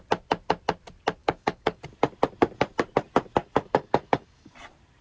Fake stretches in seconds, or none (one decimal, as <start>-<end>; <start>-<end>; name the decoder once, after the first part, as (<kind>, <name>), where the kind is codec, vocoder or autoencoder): 1.2-1.8 (codec, DAC); 3.4-4.5